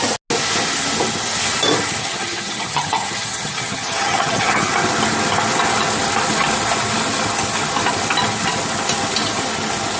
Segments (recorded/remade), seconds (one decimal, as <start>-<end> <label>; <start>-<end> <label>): 0.0-2.0 recorded; 2.0-4.7 remade; 4.7-10.0 recorded